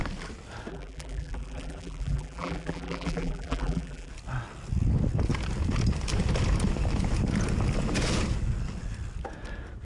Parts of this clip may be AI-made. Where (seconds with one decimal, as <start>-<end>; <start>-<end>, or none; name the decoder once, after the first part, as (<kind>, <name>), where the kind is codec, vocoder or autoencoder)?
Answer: 0.7-4.1 (vocoder, BigVGAN v2)